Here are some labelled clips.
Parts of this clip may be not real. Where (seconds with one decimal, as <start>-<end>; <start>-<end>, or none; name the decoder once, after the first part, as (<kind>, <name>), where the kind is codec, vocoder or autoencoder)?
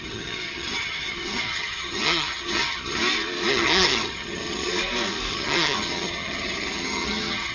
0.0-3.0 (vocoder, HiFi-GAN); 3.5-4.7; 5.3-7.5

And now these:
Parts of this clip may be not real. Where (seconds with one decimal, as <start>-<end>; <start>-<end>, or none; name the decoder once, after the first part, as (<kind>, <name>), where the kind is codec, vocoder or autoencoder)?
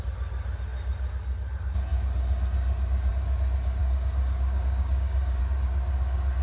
3.8-5.4 (codec, DAC)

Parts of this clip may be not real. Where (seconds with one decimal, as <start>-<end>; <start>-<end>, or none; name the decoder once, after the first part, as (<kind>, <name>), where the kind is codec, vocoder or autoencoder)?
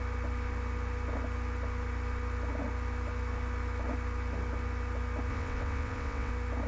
5.3-6.3 (vocoder, WaveNeXt)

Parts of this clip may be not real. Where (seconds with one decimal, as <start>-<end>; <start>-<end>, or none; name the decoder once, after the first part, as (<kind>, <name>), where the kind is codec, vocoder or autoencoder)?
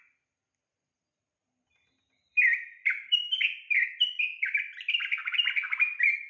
2.3-3.2 (vocoder, BigVGAN v2)